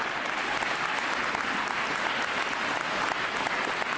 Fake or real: real